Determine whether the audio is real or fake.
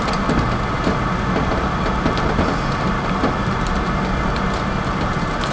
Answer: real